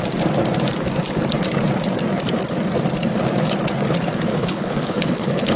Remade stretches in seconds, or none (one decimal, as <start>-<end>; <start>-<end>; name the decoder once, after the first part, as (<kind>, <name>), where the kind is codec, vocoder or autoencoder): 4.3-5.6 (codec, HILCodec)